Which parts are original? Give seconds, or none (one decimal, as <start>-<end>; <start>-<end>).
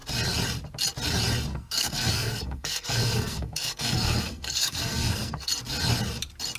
0.0-1.5; 5.5-6.6